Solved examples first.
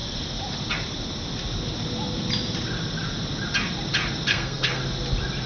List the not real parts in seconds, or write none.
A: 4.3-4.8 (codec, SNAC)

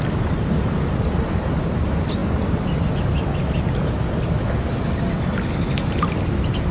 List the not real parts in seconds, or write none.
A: none

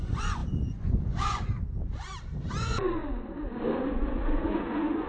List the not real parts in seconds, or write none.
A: 0.0-1.5 (vocoder, Vocos); 2.5-3.0; 4.1-5.1

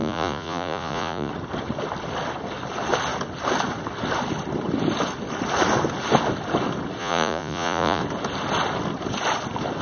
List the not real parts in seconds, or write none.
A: 0.0-1.3 (vocoder, Vocos); 7.0-8.0